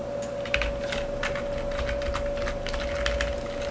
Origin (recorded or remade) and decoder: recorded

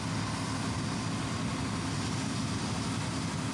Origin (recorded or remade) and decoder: recorded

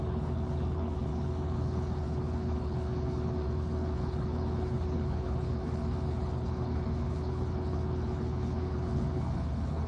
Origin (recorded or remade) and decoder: remade, codec, HILCodec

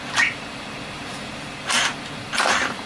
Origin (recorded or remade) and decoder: remade, vocoder, BigVGAN v2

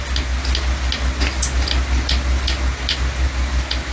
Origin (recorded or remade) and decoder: recorded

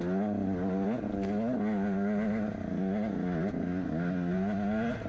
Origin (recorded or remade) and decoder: recorded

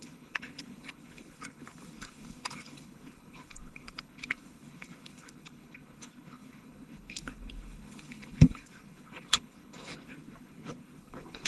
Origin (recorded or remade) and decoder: remade, codec, HILCodec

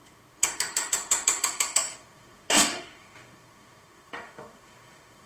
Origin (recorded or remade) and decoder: remade, autoencoder, DAC-VAE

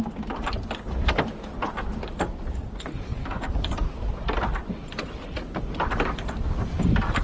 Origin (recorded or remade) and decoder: recorded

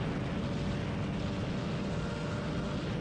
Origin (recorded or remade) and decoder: recorded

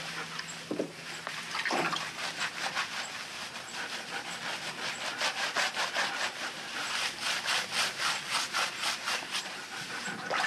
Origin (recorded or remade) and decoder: remade, vocoder, BigVGAN v2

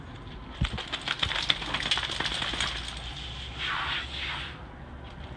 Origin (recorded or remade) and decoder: recorded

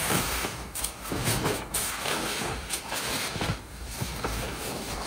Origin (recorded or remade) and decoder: remade, codec, DAC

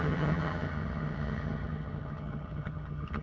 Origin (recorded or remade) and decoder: remade, vocoder, HiFi-GAN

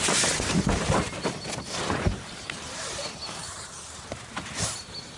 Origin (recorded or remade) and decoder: remade, vocoder, BigVGAN v2